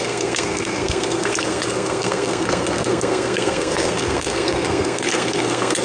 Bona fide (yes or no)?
no